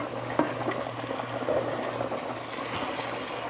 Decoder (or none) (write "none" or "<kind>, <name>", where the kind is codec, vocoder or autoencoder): none